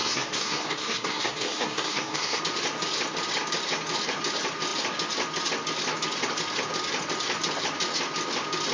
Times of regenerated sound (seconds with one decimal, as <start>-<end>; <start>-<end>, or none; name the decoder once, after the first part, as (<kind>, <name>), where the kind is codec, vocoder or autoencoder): 0.0-2.4 (codec, SNAC)